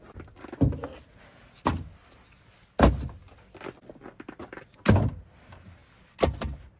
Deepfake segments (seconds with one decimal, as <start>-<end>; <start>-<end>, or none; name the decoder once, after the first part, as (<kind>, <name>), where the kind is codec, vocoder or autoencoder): none